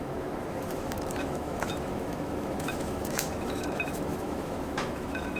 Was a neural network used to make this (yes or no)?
yes